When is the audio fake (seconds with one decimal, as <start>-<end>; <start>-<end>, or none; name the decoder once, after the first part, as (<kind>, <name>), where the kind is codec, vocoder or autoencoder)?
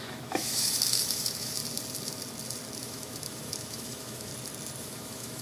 0.0-1.6 (autoencoder, DAC-VAE); 2.8-4.3; 4.8-5.4